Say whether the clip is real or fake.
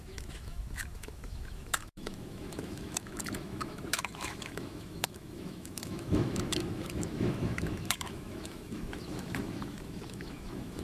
fake